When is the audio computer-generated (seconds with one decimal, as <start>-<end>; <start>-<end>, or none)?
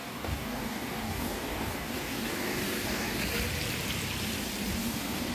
0.0-3.2; 4.8-5.3